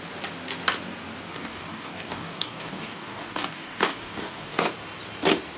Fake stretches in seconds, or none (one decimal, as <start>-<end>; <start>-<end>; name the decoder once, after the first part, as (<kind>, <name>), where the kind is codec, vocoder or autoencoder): 1.3-4.7 (codec, DAC)